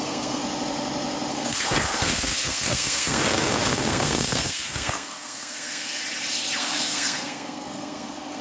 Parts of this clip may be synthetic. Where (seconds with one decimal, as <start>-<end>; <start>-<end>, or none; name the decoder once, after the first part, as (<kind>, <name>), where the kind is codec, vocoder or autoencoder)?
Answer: 0.0-0.4 (codec, SNAC); 1.3-6.0; 6.6-8.4